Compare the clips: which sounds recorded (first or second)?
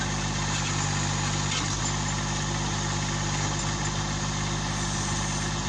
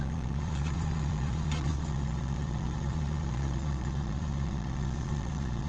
first